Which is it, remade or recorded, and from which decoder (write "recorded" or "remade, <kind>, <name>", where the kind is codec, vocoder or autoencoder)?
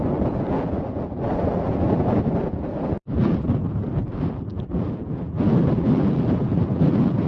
remade, vocoder, BigVGAN v2